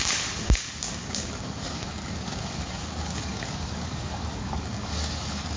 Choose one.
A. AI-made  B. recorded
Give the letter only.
A